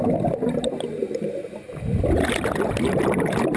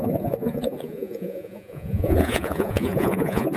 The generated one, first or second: second